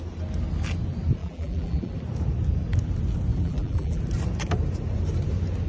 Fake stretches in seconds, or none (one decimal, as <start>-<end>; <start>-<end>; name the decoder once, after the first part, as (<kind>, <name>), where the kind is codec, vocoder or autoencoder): 1.2-1.9 (vocoder, BigVGAN v2); 3.3-4.0